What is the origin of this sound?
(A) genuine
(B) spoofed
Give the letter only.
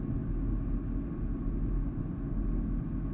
A